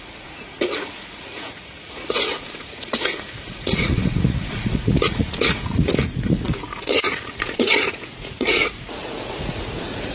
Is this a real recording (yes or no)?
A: no